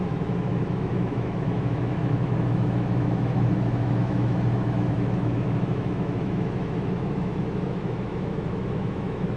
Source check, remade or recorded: remade